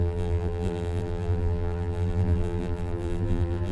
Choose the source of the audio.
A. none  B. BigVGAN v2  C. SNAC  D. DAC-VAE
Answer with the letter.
B